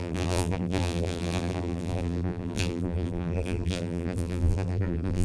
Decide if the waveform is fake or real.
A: fake